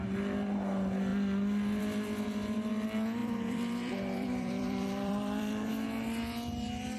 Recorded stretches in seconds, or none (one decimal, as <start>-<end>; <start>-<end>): 0.0-3.2; 5.7-7.0